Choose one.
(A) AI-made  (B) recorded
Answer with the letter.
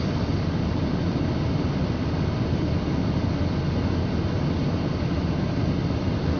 B